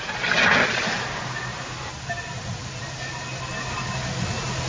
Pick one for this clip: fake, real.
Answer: real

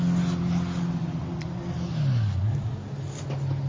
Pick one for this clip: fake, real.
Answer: real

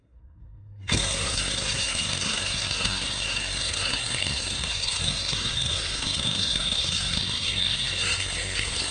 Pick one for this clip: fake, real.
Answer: fake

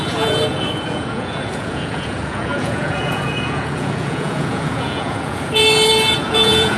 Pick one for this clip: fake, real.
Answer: fake